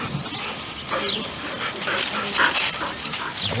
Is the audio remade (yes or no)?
no